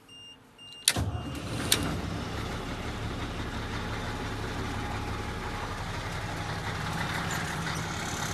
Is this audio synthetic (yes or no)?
no